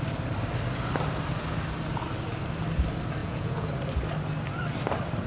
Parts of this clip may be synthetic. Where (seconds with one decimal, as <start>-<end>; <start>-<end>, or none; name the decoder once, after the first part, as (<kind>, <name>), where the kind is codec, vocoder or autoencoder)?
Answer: 3.2-3.7 (vocoder, Vocos)